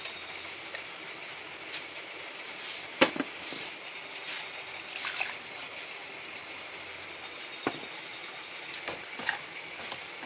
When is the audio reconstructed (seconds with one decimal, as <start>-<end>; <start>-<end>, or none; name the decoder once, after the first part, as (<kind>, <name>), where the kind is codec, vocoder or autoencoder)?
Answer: none